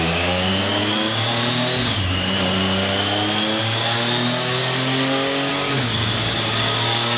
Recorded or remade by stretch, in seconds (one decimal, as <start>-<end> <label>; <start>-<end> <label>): 0.0-0.8 remade; 0.8-3.6 recorded; 3.6-4.6 remade; 4.6-5.5 recorded; 5.5-7.2 remade